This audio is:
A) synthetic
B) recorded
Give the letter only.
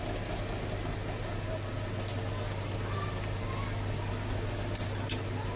B